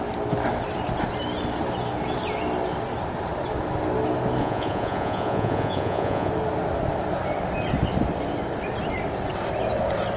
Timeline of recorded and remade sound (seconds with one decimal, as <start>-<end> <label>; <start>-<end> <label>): 0.0-4.4 recorded; 4.4-6.3 remade; 6.3-10.2 recorded